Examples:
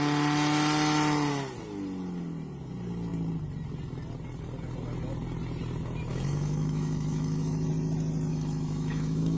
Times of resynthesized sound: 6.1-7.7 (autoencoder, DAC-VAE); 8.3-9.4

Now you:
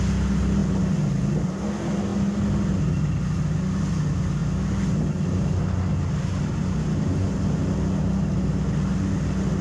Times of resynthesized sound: none

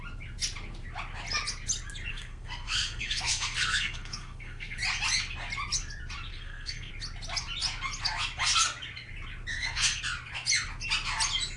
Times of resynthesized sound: 2.1-4.8 (codec, SNAC); 6.3-6.9; 9.5-10.0